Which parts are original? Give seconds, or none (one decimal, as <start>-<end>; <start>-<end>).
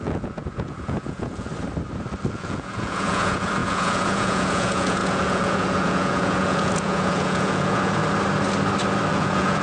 1.5-2.3; 8.0-9.1